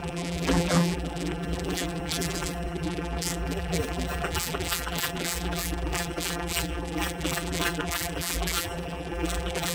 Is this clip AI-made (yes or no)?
yes